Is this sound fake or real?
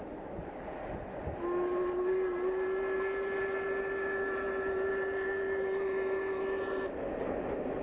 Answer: real